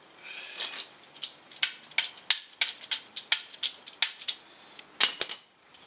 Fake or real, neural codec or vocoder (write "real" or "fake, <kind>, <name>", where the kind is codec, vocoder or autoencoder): real